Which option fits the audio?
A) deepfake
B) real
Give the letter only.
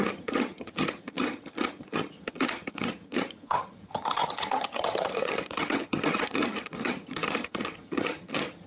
A